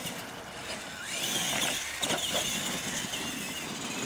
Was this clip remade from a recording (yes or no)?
no